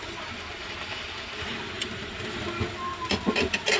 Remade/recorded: recorded